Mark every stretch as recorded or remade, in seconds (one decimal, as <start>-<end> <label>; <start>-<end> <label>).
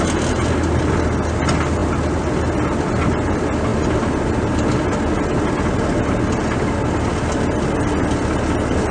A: 0.0-8.9 recorded